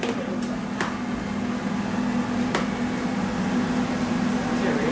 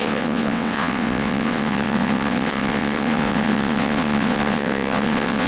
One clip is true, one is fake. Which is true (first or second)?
first